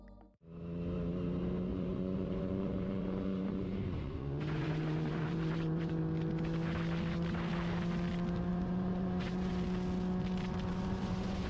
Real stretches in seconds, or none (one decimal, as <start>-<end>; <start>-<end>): 0.0-1.7; 6.0-8.5; 9.5-10.7

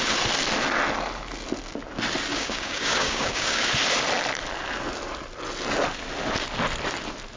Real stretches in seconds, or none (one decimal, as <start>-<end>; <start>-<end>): 0.0-2.3; 3.7-7.4